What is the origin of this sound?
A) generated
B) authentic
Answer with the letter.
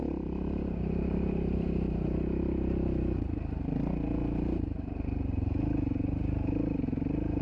A